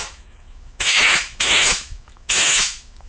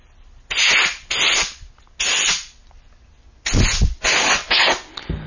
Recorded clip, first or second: second